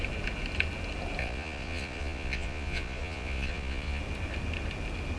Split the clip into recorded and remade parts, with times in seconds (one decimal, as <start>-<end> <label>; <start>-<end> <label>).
0.0-1.2 recorded; 1.2-4.0 remade; 4.0-5.2 recorded